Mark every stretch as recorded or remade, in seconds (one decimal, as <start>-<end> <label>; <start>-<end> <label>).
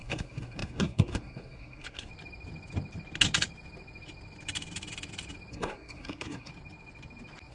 0.0-2.1 remade; 2.1-5.5 recorded; 5.5-6.5 remade; 6.5-7.5 recorded